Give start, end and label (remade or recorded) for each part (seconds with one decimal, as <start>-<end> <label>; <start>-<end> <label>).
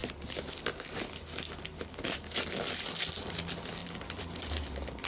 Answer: 0.0-3.8 recorded; 3.8-4.5 remade; 4.5-5.1 recorded